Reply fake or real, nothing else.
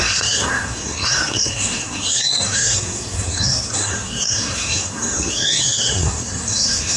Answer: fake